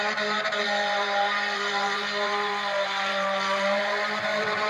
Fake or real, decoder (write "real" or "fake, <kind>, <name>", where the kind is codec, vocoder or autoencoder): fake, vocoder, BigVGAN v2